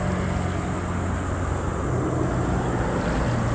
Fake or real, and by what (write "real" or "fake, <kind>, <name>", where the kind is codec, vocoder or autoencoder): real